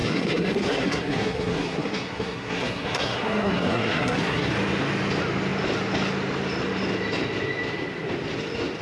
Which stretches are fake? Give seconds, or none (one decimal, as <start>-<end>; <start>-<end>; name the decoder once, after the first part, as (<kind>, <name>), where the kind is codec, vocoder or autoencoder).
0.0-4.5 (codec, SNAC)